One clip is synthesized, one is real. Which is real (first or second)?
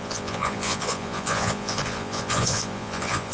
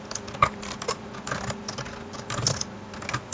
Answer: second